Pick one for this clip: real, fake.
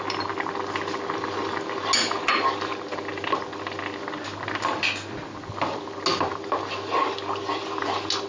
real